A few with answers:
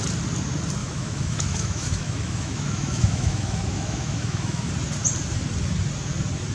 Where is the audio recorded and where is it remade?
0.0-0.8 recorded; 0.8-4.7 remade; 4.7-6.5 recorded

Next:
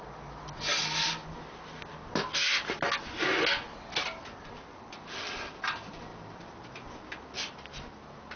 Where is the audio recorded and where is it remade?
0.0-8.4 recorded

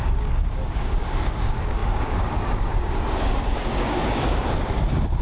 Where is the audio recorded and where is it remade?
0.0-5.2 remade

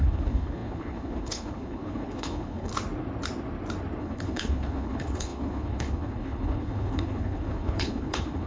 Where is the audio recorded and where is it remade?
0.0-2.7 remade; 2.7-4.0 recorded; 4.0-8.5 remade

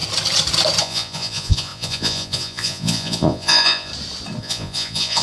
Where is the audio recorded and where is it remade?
0.0-0.8 recorded; 0.8-3.9 remade; 3.9-4.4 recorded; 4.4-5.2 remade